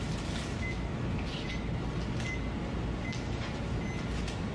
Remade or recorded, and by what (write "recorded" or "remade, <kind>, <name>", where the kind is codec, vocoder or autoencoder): recorded